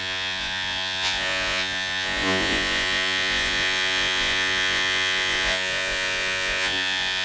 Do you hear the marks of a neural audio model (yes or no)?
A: yes